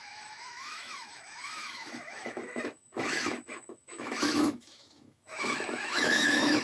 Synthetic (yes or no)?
yes